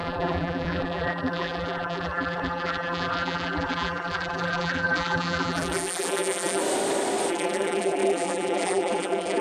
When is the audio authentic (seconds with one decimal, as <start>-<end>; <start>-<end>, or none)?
6.6-7.3